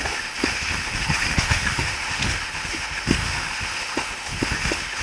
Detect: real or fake fake